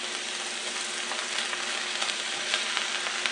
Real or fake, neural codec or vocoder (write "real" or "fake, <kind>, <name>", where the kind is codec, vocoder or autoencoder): real